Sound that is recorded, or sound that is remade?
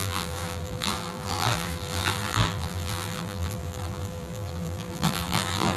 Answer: remade